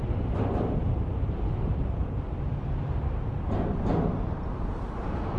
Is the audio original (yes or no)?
yes